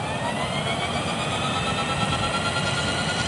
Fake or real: real